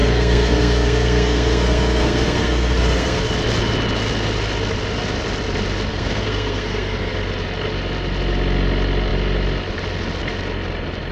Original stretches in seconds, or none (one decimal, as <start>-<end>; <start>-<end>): 3.2-5.9; 7.1-11.1